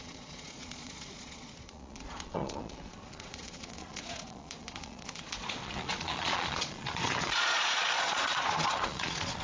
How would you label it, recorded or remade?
remade